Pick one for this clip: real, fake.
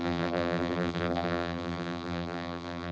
fake